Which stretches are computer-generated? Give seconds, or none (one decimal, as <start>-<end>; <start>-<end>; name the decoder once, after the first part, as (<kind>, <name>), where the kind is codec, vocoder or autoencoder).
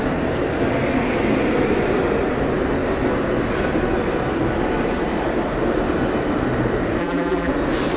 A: 7.0-7.5 (vocoder, BigVGAN v2)